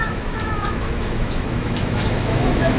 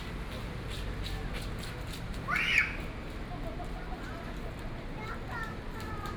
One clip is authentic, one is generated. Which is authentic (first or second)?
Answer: second